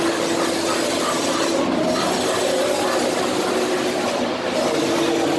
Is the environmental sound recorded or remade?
recorded